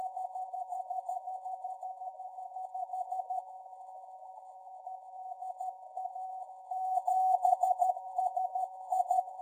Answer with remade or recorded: remade